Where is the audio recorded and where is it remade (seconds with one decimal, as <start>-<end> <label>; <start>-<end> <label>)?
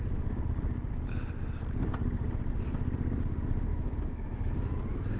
0.0-3.7 recorded; 3.7-4.5 remade; 4.5-5.2 recorded